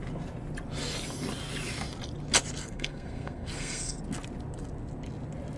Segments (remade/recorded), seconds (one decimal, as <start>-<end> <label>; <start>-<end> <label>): 0.0-2.6 recorded; 2.6-4.0 remade; 4.0-5.6 recorded